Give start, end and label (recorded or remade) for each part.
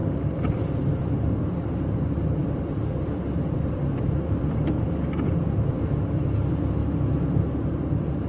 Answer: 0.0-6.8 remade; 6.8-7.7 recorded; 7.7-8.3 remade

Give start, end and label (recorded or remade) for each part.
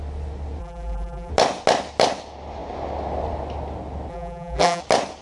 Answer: 0.0-0.6 recorded; 0.6-1.3 remade; 1.3-4.1 recorded; 4.1-4.8 remade; 4.8-5.2 recorded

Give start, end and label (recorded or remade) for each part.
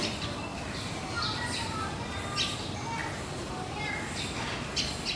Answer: 0.0-0.5 recorded; 0.5-1.9 remade; 1.9-5.2 recorded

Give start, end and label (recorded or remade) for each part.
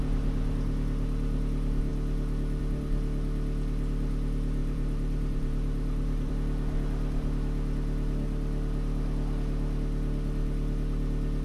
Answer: 0.0-4.6 recorded; 4.6-6.3 remade; 6.3-11.4 recorded